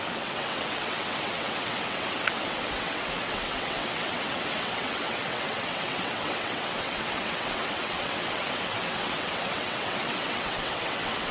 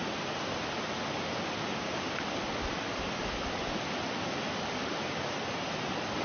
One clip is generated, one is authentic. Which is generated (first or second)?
first